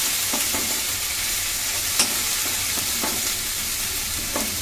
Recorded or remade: remade